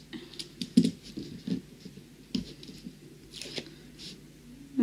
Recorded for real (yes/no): yes